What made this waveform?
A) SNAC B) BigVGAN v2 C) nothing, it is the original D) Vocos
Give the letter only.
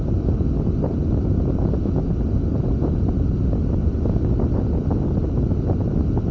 C